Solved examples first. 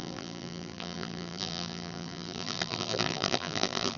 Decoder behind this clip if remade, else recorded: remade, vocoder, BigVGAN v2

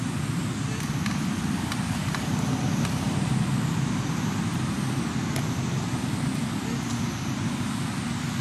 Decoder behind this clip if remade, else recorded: recorded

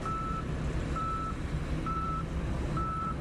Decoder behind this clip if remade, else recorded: remade, vocoder, BigVGAN v2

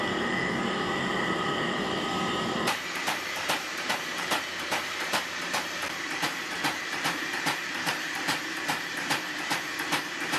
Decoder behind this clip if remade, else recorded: remade, vocoder, BigVGAN v2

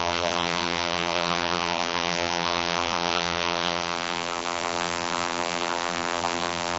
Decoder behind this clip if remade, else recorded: remade, vocoder, BigVGAN v2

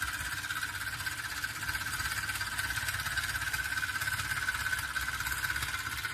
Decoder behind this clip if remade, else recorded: recorded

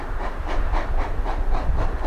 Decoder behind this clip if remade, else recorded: remade, vocoder, BigVGAN v2